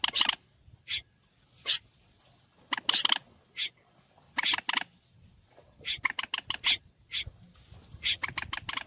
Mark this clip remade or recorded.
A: recorded